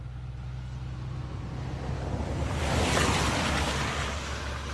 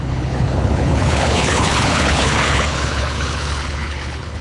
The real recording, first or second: first